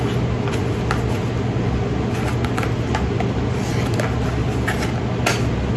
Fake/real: real